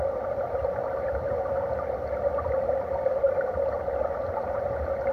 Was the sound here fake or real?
real